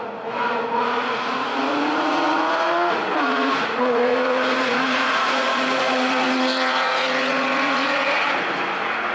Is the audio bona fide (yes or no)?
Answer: no